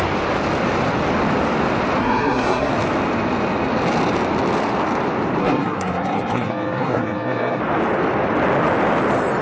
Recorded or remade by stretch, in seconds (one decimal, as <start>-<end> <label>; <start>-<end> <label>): 0.0-2.0 recorded; 2.0-2.7 remade; 2.7-5.4 recorded; 5.4-7.6 remade; 7.6-9.4 recorded